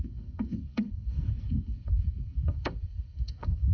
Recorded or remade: remade